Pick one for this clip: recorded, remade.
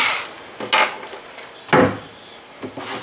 recorded